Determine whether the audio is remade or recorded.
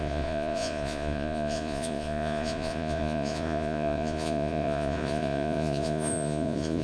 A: remade